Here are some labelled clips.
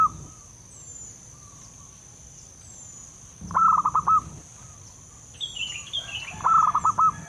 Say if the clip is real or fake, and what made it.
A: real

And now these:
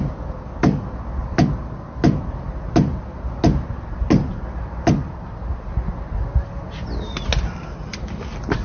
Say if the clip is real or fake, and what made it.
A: real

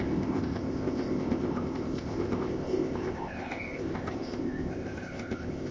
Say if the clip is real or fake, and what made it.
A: fake, codec, ZipCodec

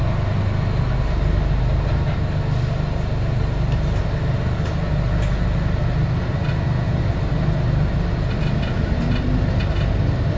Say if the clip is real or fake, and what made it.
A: real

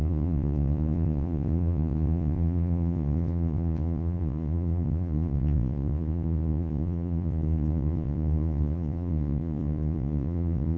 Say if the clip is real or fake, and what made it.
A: fake, vocoder, Vocos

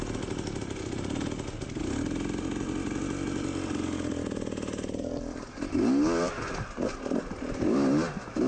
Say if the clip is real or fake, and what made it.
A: real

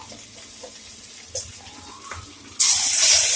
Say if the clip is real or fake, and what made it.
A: real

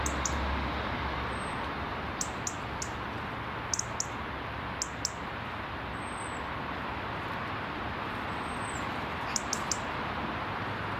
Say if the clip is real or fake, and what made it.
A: real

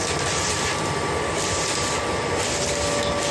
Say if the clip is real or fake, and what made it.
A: real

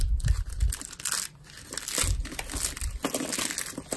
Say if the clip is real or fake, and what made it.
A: real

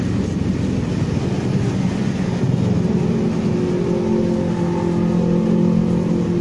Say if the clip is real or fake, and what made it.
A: real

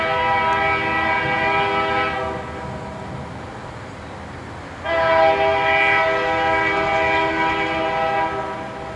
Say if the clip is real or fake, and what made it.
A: real